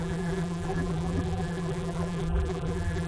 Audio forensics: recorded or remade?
remade